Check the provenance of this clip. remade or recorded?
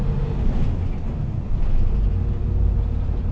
recorded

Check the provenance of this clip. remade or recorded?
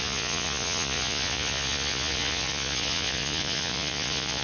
remade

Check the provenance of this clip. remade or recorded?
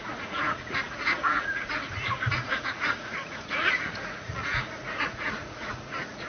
remade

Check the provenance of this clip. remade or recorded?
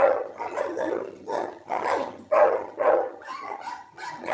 remade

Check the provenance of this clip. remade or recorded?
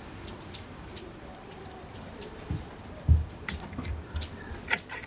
remade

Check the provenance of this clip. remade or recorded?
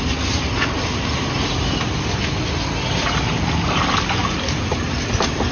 recorded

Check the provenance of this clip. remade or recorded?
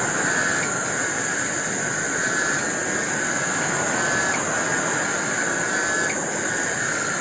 recorded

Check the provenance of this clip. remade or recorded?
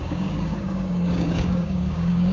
remade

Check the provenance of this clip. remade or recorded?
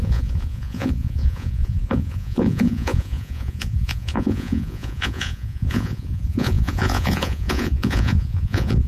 remade